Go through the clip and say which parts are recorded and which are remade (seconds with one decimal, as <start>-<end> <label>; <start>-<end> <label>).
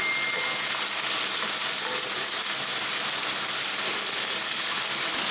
0.0-5.3 recorded